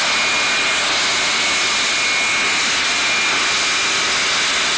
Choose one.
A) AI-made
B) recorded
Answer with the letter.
B